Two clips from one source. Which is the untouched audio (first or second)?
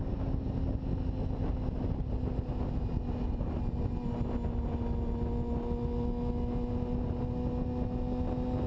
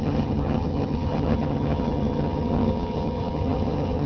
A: first